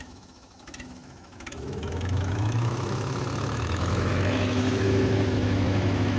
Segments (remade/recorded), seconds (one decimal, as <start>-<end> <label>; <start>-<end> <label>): 0.0-6.2 remade